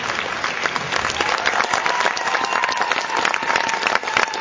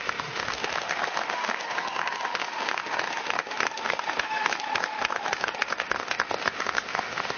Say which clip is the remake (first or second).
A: second